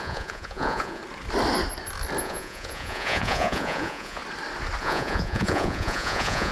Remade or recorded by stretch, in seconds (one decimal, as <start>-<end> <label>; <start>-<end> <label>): 0.0-1.0 remade; 1.0-2.2 recorded; 2.2-4.2 remade; 4.2-4.8 recorded; 4.8-6.5 remade